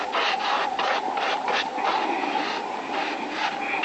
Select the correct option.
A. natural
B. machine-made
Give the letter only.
A